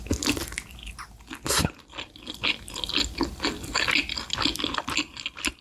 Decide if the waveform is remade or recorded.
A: recorded